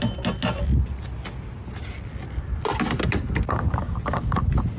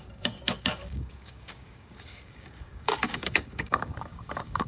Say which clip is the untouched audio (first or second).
first